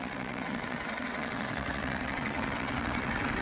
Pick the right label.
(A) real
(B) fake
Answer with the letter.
B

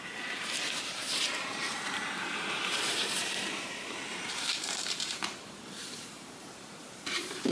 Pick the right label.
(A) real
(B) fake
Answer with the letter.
B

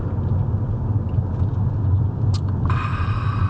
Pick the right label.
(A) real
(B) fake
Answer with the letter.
A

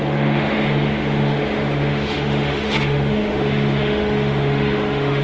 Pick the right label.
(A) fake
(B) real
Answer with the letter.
A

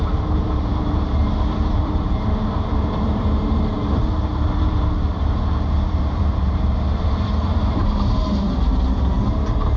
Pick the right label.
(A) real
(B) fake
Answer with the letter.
B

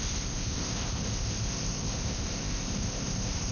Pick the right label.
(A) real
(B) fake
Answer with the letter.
B